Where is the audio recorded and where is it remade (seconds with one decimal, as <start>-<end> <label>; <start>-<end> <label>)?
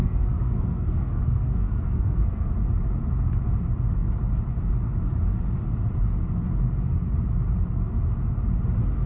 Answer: 0.0-2.5 remade; 2.5-9.1 recorded